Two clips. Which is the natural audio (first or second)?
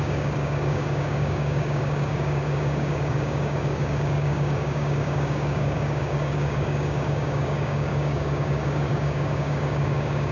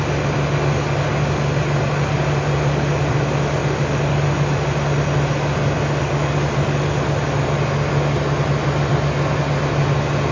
second